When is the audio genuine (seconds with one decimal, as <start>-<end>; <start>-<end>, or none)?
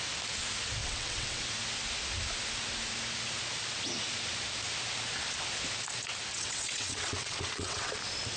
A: 0.0-0.8; 1.4-6.3; 7.9-8.4